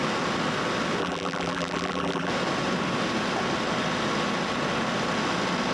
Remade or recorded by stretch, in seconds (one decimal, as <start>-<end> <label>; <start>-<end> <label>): 0.0-1.0 recorded; 1.0-2.3 remade; 2.3-5.7 recorded